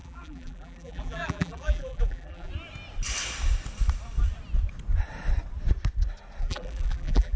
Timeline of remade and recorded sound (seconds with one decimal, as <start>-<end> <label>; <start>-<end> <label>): 0.0-2.5 remade; 2.5-6.4 recorded; 6.4-7.4 remade

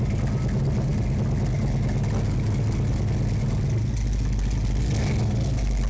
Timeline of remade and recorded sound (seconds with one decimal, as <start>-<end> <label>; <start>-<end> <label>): 0.0-5.9 recorded

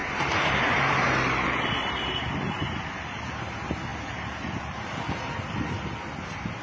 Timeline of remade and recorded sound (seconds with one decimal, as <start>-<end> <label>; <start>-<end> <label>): 0.0-2.2 remade; 2.2-6.6 recorded

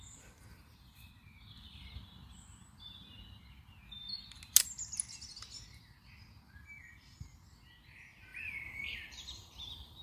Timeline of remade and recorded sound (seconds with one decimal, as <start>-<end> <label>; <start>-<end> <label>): 0.0-0.5 recorded; 0.5-1.1 remade; 1.1-8.3 recorded; 8.3-10.0 remade